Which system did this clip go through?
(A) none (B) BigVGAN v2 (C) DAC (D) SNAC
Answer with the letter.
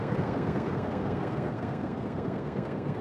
D